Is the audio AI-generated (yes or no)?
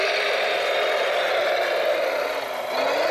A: no